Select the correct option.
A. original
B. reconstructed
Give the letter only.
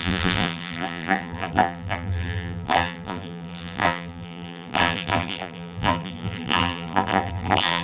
B